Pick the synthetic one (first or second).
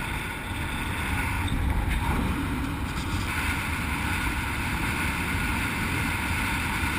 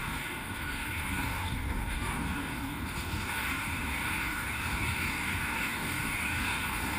second